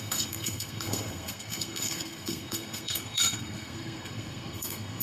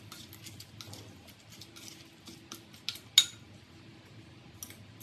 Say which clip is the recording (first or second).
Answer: second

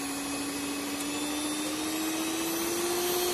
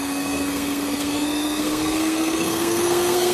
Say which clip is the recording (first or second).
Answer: first